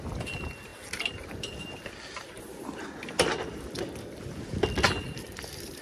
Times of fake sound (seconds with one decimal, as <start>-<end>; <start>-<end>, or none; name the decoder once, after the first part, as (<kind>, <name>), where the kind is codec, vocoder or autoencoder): none